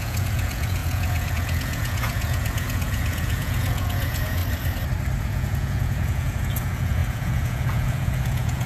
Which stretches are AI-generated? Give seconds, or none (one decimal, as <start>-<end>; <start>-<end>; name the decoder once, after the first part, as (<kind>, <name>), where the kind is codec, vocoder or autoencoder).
0.0-4.4 (vocoder, Vocos); 5.2-8.7